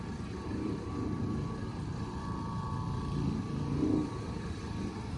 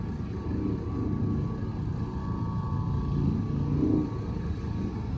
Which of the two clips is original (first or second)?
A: second